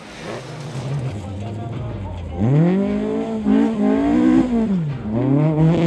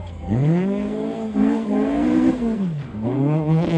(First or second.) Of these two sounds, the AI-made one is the second